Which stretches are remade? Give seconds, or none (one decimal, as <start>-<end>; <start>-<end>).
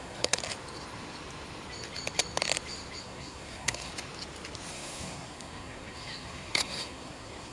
0.0-0.4; 3.0-3.9; 4.7-7.5